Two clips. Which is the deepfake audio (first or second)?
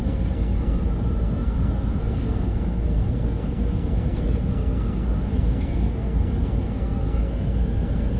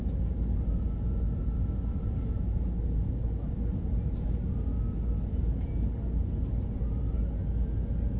first